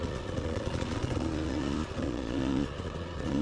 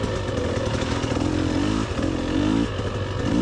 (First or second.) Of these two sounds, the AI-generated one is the first